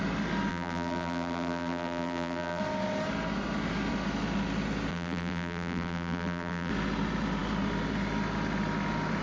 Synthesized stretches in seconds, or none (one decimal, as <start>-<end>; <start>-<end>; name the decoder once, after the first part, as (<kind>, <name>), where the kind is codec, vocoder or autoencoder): 0.5-2.6 (vocoder, BigVGAN v2); 4.9-6.7